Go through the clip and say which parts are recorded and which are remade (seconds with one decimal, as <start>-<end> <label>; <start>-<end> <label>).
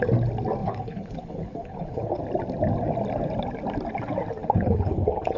0.0-0.6 recorded; 0.6-2.2 remade; 2.2-4.4 recorded; 4.4-5.4 remade